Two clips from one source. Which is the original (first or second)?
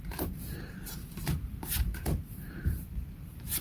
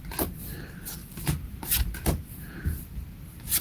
second